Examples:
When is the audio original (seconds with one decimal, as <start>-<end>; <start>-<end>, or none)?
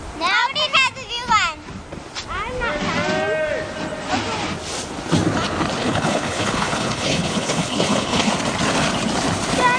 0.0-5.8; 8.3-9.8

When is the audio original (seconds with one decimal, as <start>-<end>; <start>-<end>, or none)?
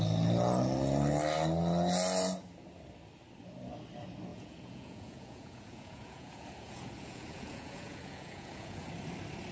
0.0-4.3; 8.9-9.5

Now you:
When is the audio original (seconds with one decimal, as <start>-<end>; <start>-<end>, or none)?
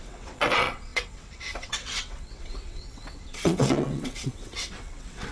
none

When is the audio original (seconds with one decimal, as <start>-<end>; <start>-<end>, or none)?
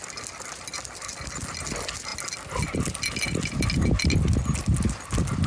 0.0-5.5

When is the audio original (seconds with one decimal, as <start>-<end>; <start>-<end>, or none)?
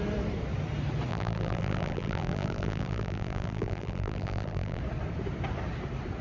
0.0-1.1; 4.8-6.2